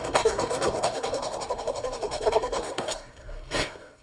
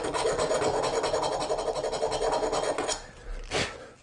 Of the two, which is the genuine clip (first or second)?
second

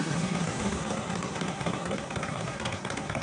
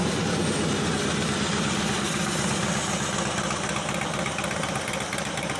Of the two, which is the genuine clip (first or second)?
second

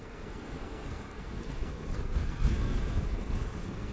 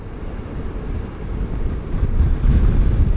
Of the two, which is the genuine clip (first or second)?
second